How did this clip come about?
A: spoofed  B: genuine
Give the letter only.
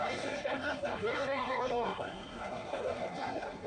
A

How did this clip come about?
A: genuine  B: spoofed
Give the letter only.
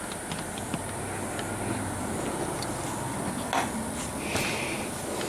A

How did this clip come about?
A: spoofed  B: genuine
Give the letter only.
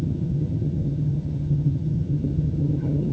A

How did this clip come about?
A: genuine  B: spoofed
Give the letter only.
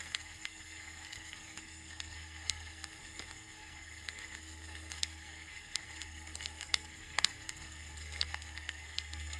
B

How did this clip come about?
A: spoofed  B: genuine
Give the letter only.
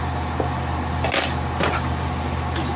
B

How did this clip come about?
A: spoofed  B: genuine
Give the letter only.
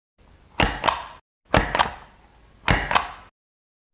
B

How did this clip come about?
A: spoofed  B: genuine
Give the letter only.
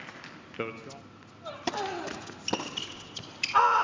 B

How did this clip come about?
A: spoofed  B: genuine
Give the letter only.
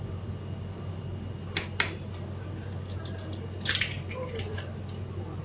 B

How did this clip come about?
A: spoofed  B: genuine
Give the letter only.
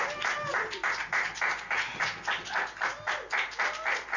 B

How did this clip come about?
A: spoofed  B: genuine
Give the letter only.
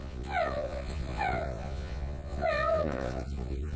A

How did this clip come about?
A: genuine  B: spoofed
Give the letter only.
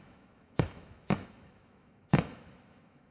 B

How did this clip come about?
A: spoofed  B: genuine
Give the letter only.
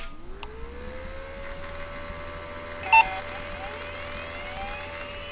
B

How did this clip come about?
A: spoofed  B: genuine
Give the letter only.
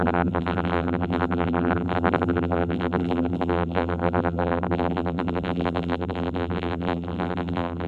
A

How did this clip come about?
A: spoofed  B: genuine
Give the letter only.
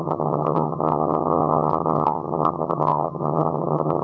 A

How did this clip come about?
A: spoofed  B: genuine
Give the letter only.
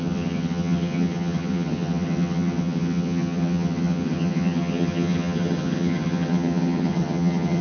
A